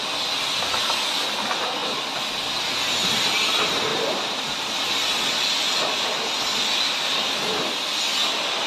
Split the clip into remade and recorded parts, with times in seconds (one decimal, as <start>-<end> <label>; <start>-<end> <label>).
0.0-3.9 recorded; 3.9-5.2 remade; 5.2-8.7 recorded